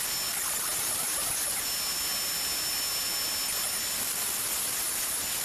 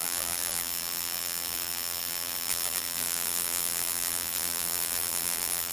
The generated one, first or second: second